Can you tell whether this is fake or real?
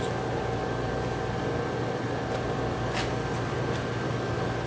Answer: real